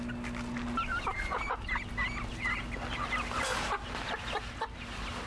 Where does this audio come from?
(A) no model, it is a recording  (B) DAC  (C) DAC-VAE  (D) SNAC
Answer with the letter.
A